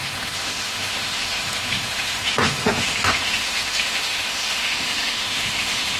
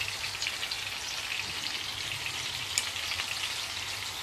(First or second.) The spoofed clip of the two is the first